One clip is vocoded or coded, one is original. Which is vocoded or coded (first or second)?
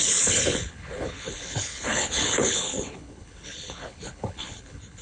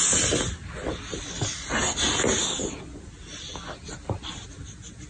first